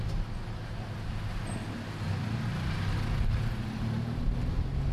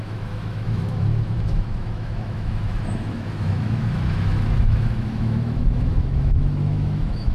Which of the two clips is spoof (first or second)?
second